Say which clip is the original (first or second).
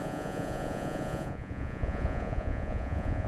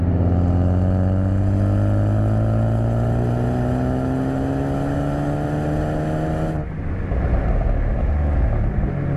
second